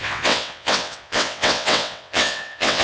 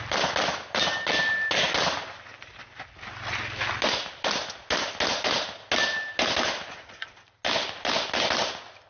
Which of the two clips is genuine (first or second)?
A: second